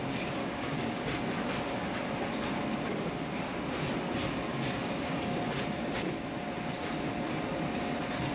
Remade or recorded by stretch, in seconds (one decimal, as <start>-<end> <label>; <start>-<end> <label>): 0.0-0.4 recorded; 0.4-1.1 remade; 1.1-4.5 recorded; 4.5-5.6 remade; 5.6-8.3 recorded